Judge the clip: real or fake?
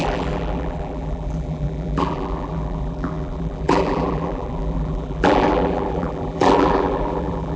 fake